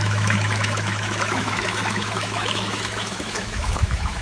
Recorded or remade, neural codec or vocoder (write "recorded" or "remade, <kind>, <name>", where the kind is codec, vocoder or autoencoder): remade, autoencoder, DAC-VAE